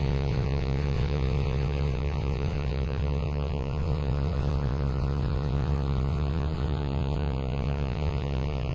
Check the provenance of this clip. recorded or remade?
remade